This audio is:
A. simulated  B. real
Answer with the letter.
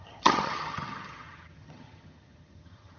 A